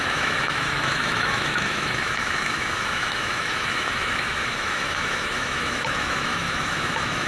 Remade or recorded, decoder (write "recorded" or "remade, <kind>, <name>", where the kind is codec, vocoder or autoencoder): remade, autoencoder, DAC-VAE